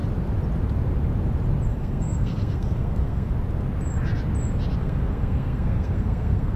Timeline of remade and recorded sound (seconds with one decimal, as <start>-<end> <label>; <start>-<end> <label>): 0.0-1.7 recorded; 1.7-3.3 remade; 3.3-4.8 recorded; 4.8-6.6 remade